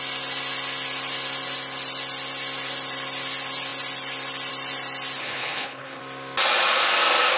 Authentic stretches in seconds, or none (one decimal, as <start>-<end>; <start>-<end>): 0.0-5.2; 6.0-7.4